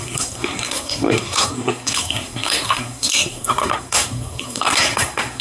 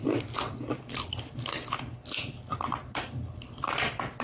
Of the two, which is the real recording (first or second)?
second